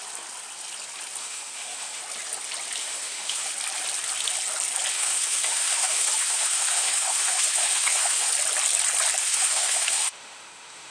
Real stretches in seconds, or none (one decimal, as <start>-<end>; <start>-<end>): 0.0-1.2; 2.0-2.8; 3.5-4.9; 8.3-9.2